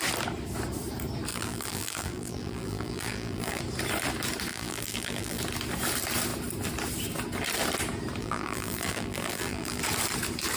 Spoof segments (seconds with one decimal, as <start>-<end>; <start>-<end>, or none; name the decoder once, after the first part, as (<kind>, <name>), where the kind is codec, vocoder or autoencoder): 1.3-3.6 (vocoder, BigVGAN v2); 4.5-5.4; 8.2-9.8